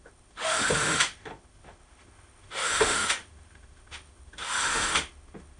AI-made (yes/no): yes